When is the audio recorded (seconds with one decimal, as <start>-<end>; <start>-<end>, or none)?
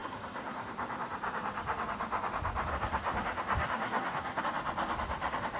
0.7-2.7; 4.4-5.6